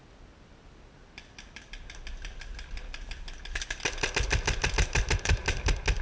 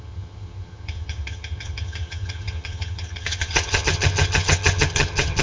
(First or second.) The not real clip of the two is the second